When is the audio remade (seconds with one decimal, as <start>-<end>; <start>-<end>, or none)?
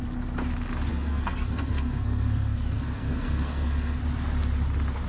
0.9-4.0